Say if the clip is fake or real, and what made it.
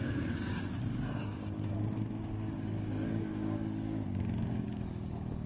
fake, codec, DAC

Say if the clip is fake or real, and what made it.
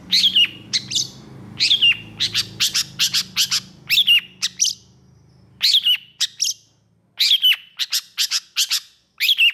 real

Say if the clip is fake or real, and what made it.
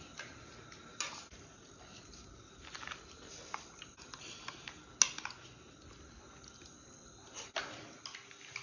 real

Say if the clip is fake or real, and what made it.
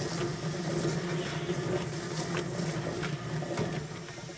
real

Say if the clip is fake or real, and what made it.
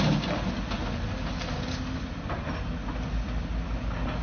real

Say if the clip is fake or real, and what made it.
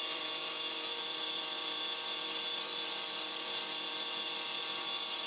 fake, vocoder, BigVGAN v2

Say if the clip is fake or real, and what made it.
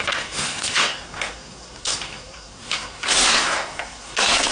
fake, codec, SNAC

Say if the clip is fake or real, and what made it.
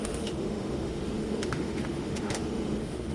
fake, autoencoder, DAC-VAE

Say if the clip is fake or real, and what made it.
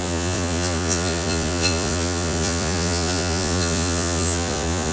fake, vocoder, Vocos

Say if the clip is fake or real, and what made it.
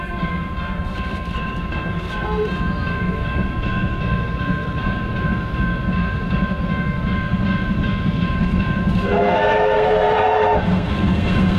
fake, codec, SNAC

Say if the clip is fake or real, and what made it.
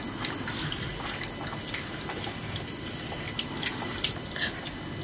real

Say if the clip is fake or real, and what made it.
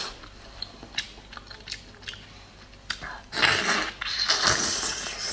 real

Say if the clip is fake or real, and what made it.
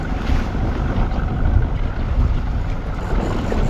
real